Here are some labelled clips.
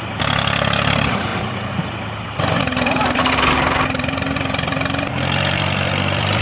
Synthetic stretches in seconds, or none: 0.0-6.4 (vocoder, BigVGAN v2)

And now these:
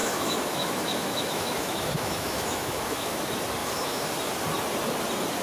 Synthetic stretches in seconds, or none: 0.0-3.2 (autoencoder, DAC-VAE); 3.6-4.1